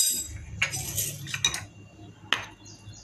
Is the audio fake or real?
real